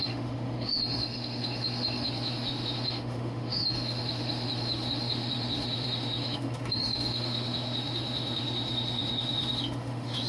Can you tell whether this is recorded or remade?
remade